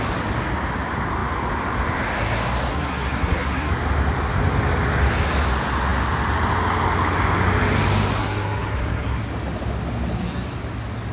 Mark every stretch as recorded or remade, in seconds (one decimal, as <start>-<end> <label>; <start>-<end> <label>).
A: 0.0-2.7 recorded; 2.7-3.7 remade; 3.7-8.2 recorded; 8.2-9.3 remade; 9.3-11.1 recorded